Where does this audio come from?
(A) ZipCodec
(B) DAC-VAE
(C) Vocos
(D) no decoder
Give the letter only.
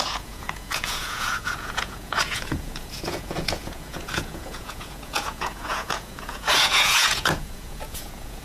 C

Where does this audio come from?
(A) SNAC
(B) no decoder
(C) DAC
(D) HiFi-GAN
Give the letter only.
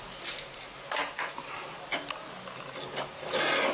B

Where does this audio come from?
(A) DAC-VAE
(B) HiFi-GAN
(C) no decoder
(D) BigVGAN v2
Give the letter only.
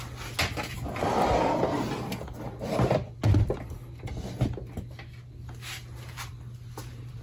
C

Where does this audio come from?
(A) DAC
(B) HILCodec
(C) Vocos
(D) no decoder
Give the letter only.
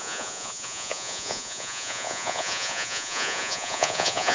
C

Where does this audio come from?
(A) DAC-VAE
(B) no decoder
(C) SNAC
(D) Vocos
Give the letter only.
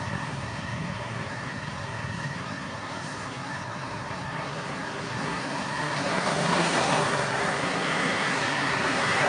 C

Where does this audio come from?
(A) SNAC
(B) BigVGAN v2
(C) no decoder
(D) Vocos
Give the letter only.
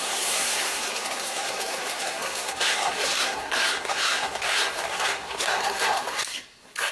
A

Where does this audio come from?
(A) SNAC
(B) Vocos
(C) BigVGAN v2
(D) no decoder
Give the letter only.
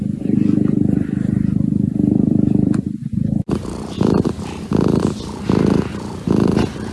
C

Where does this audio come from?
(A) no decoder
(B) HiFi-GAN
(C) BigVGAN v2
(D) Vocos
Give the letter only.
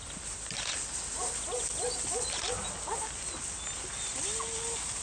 A